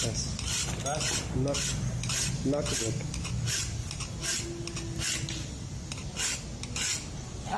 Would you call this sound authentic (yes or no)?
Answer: yes